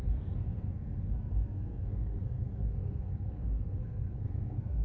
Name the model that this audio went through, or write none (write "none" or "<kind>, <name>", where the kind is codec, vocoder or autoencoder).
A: codec, SNAC